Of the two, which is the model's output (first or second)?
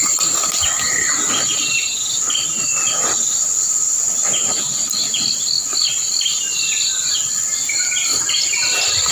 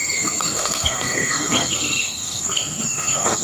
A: second